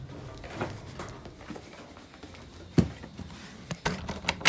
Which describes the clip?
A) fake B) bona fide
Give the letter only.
B